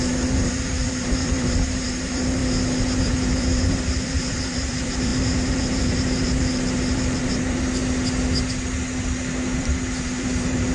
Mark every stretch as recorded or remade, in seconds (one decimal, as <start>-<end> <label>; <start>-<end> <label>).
0.0-2.4 remade; 2.4-3.0 recorded; 3.0-7.8 remade; 7.8-9.6 recorded; 9.6-10.7 remade